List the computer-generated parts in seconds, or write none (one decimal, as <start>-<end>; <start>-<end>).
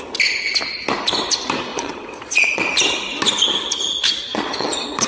1.7-2.6; 4.3-5.1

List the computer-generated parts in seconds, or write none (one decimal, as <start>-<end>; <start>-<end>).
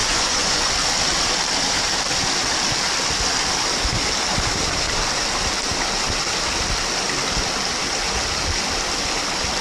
0.0-0.7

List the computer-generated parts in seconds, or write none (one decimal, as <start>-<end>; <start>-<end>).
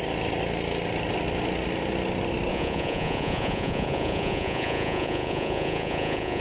2.5-6.4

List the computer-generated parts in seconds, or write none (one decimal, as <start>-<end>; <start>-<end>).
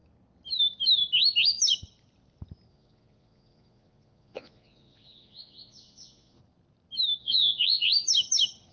2.7-6.4; 7.2-7.9